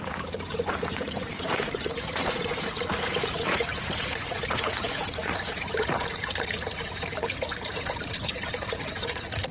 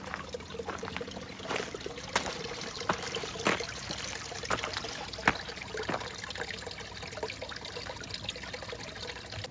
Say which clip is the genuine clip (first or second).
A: second